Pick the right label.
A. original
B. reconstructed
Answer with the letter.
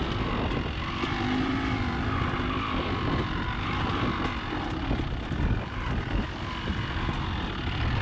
A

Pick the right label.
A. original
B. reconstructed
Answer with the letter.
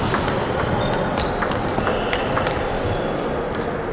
A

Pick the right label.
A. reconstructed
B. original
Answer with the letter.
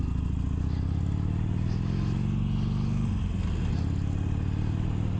B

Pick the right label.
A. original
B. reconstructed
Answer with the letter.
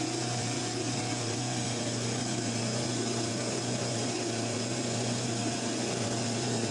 B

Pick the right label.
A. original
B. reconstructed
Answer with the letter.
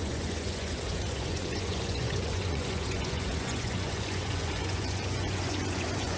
B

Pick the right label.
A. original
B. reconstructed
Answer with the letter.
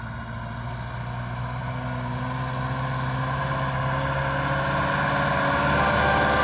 A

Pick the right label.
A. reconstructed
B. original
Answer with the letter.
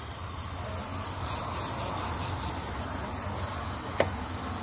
B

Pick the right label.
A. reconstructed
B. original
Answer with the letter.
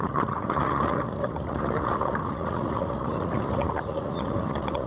A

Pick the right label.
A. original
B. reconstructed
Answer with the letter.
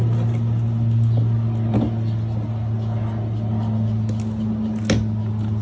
A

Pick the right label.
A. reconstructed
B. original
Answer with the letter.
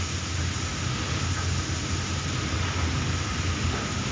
B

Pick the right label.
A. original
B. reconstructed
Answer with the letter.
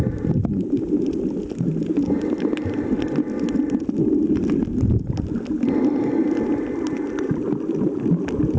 A